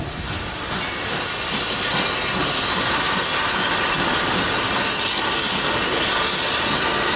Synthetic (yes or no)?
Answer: no